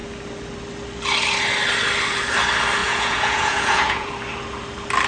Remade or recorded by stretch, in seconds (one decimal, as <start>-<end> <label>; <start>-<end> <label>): 0.0-2.8 recorded; 2.8-4.1 remade; 4.1-5.1 recorded